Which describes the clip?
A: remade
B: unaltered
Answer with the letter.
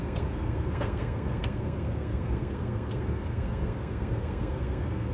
A